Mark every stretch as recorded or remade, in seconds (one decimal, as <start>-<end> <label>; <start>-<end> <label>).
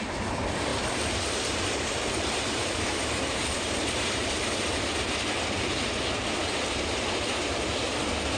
0.0-0.7 recorded; 0.7-4.3 remade; 4.3-8.4 recorded